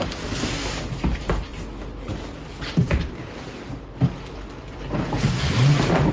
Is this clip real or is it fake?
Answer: real